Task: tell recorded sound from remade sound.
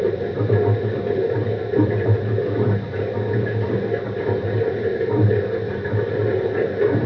recorded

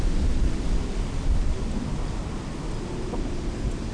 recorded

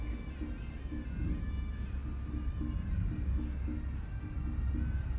recorded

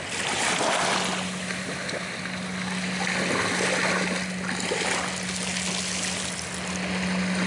recorded